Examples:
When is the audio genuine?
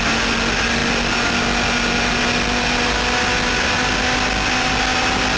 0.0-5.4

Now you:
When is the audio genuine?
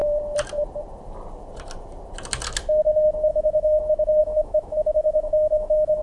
0.0-3.3; 3.8-4.2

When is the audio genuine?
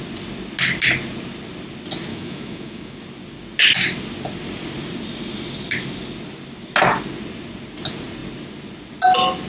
0.0-2.1; 3.0-9.5